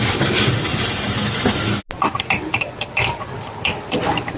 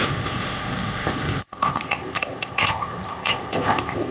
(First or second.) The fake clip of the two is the second